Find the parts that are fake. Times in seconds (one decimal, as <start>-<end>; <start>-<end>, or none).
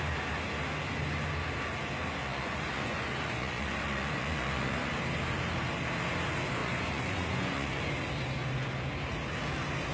2.2-4.9; 6.6-7.8